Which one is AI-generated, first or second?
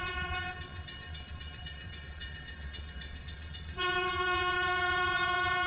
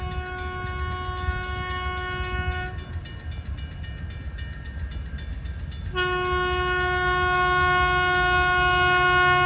first